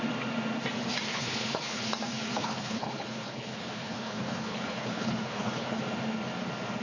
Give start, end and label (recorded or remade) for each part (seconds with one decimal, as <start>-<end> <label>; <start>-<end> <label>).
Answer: 0.0-1.1 recorded; 1.1-1.8 remade; 1.8-2.4 recorded; 2.4-5.8 remade; 5.8-6.8 recorded